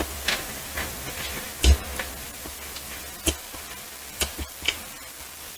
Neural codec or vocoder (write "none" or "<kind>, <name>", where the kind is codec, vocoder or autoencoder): none